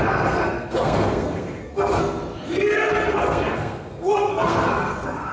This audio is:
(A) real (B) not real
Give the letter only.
B